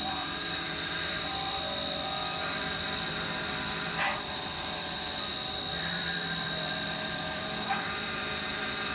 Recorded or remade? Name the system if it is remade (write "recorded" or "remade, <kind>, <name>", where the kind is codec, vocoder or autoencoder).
remade, vocoder, BigVGAN v2